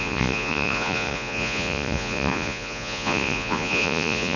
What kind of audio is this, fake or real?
fake